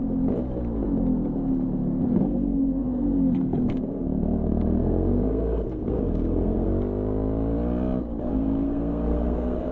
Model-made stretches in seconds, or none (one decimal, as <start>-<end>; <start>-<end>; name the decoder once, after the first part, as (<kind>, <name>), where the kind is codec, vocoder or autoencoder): 2.0-6.7 (codec, SNAC); 8.2-9.7